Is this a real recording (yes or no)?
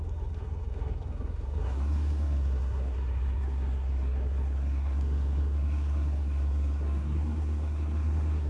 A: no